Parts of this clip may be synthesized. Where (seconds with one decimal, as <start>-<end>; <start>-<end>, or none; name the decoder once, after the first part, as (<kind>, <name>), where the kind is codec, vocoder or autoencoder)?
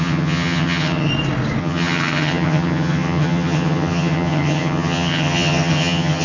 0.0-1.1 (vocoder, HiFi-GAN); 1.6-6.2